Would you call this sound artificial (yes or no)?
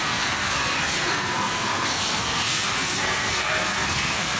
yes